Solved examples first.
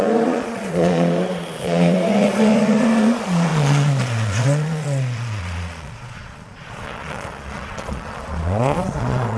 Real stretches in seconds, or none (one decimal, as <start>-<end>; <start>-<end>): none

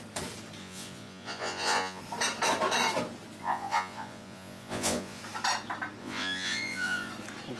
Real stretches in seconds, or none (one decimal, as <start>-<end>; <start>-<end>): 0.0-0.6; 2.0-3.4; 5.2-6.0; 7.1-7.6

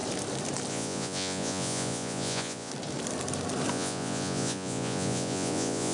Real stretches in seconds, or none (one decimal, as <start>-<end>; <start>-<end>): 0.0-0.7; 2.7-3.7

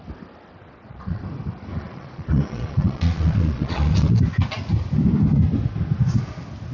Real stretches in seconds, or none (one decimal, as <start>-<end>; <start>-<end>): 0.0-0.6; 1.2-1.7; 4.2-6.7

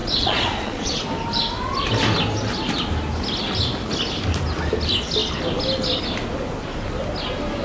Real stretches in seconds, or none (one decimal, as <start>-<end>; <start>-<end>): 1.0-7.6